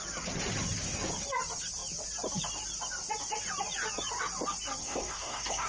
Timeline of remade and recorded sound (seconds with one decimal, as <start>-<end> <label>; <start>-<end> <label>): 0.0-4.8 recorded; 4.8-5.7 remade